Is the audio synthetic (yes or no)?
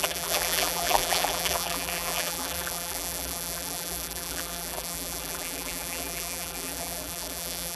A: yes